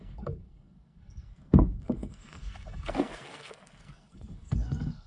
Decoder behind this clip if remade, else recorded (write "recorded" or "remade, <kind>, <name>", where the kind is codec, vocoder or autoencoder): remade, codec, SNAC